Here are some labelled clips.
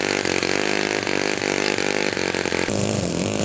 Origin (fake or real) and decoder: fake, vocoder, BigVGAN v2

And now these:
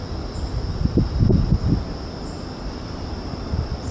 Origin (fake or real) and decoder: real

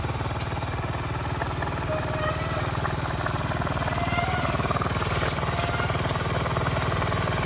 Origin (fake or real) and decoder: real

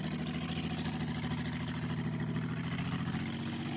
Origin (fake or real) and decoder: real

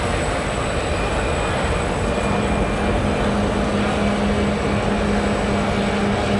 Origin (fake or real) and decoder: real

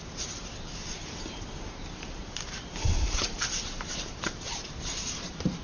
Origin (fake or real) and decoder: fake, vocoder, BigVGAN v2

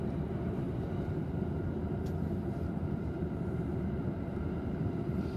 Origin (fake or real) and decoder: fake, vocoder, BigVGAN v2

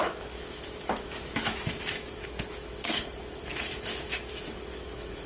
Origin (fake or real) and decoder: fake, autoencoder, DAC-VAE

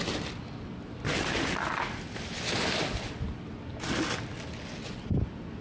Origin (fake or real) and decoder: real